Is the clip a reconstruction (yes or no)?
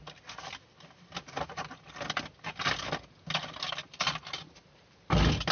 no